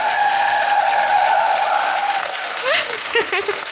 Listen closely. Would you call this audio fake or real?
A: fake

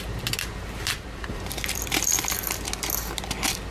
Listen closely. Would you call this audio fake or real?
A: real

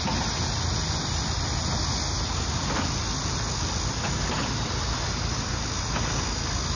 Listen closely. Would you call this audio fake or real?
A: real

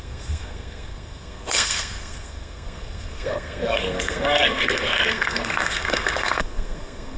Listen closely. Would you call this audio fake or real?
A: fake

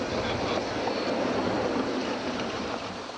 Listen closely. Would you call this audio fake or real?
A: real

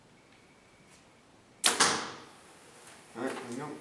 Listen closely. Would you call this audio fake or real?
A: real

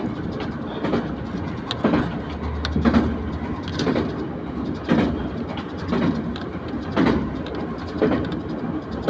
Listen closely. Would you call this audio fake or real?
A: real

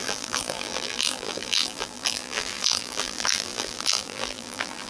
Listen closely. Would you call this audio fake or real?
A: fake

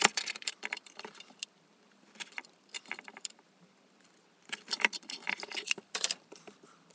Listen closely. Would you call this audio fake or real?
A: fake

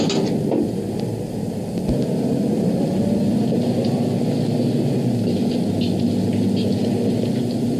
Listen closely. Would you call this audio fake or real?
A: real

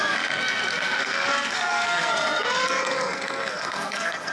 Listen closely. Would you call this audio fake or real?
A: fake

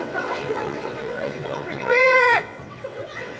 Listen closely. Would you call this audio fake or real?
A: fake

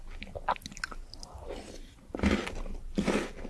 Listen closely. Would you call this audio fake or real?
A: real